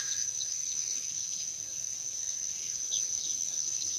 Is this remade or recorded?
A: remade